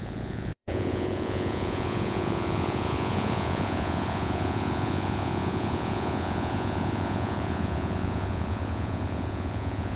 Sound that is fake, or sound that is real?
fake